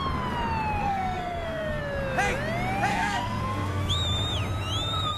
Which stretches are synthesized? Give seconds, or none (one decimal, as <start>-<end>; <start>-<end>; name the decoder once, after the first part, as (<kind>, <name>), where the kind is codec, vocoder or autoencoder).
0.8-1.8 (codec, SNAC); 2.9-3.8

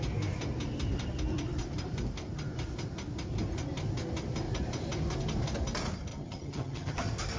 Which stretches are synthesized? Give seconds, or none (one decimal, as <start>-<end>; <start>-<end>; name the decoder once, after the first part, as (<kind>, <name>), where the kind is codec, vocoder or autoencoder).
6.1-7.0 (vocoder, HiFi-GAN)